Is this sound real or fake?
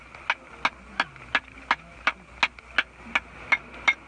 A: real